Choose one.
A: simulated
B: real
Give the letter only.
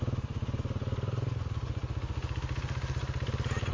B